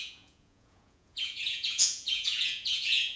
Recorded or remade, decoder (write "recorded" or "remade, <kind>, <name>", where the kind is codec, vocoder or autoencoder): remade, vocoder, Vocos